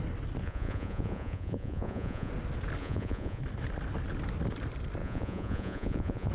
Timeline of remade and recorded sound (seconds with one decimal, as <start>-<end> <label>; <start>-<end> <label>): 0.0-0.4 recorded; 0.4-2.3 remade; 2.3-2.8 recorded; 2.8-3.4 remade; 3.4-5.0 recorded; 5.0-6.3 remade